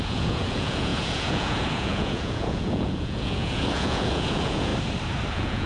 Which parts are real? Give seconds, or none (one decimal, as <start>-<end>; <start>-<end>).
4.7-5.3